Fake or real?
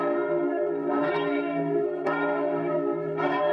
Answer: fake